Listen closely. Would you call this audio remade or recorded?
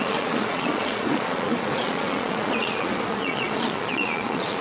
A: remade